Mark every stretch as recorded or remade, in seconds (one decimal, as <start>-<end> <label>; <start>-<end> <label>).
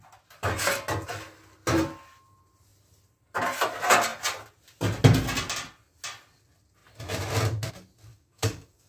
0.0-8.1 recorded; 8.1-8.9 remade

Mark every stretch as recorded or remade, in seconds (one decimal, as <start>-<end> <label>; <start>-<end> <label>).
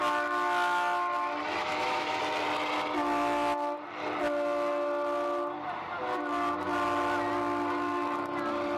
0.0-1.6 recorded; 1.6-2.2 remade; 2.2-8.8 recorded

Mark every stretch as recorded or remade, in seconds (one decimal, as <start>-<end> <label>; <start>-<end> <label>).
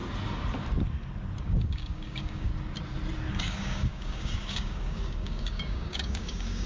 0.0-1.4 recorded; 1.4-2.5 remade; 2.5-3.3 recorded; 3.3-6.7 remade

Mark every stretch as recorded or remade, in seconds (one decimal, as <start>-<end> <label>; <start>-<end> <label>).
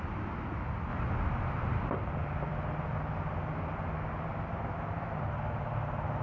0.0-4.5 recorded; 4.5-5.1 remade; 5.1-6.2 recorded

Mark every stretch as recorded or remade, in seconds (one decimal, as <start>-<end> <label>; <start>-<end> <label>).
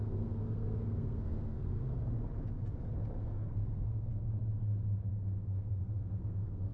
0.0-2.0 remade; 2.0-3.2 recorded; 3.2-4.1 remade; 4.1-5.1 recorded; 5.1-6.7 remade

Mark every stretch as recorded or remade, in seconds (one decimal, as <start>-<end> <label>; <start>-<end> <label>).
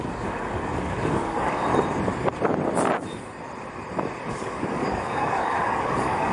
0.0-1.7 remade; 1.7-4.3 recorded; 4.3-6.3 remade